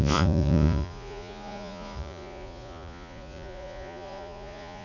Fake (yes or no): yes